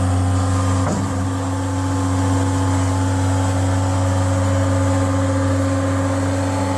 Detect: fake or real real